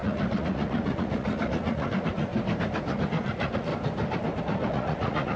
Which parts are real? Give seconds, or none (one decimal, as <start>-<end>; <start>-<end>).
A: 2.3-2.9; 3.7-4.4